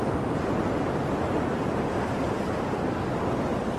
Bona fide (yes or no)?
yes